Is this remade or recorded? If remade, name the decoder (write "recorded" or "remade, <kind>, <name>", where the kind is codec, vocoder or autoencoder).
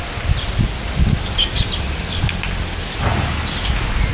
recorded